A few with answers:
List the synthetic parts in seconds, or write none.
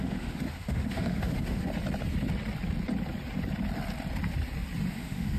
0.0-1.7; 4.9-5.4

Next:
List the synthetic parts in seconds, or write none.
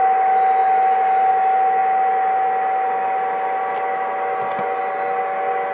none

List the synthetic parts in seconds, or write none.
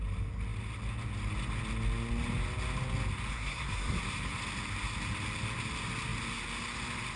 3.3-4.0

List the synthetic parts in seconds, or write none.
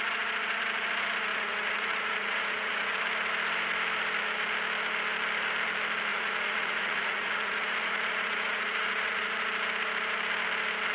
1.3-3.0; 6.1-9.4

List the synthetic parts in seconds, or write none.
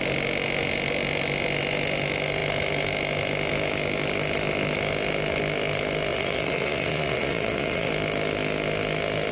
6.1-7.9